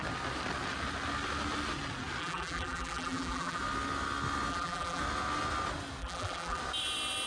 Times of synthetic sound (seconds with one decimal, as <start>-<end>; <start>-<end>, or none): 2.2-3.6; 4.5-5.0; 6.0-6.6